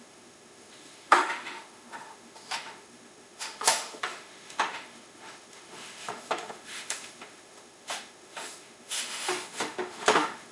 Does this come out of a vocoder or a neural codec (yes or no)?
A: yes